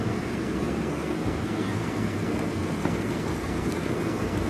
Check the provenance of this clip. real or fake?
fake